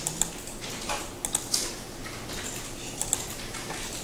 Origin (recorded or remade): recorded